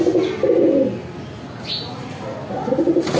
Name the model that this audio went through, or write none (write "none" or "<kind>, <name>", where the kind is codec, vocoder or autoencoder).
none